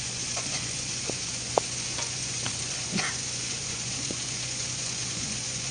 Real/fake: fake